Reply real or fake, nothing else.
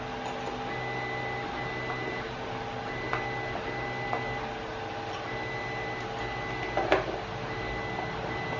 real